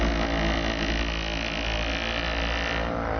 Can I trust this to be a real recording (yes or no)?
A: yes